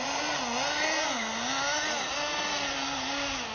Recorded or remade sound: recorded